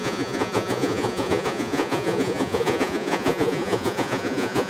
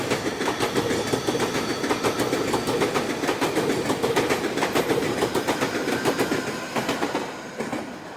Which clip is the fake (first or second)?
first